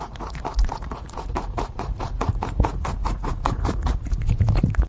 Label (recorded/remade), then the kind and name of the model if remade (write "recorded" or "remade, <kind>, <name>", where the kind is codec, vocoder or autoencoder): remade, vocoder, Vocos